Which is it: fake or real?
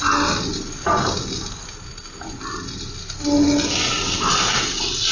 real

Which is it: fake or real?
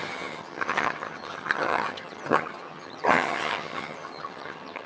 fake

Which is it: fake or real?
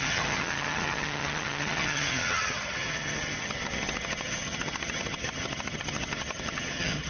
fake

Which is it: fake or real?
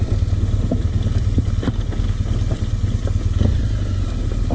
real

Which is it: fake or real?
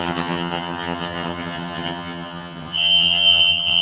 fake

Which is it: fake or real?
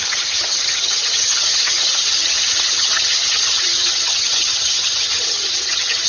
fake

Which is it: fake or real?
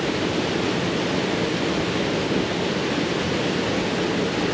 real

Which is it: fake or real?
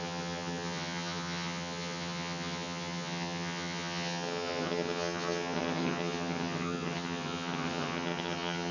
fake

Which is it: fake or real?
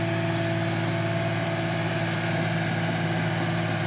real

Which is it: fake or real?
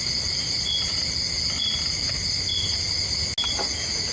real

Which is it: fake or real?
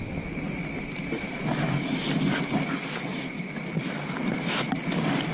real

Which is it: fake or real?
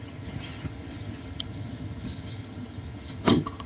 fake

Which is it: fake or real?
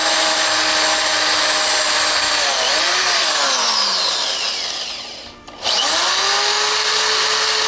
real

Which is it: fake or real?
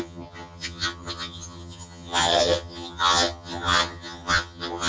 fake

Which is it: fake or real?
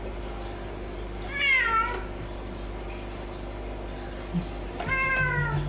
real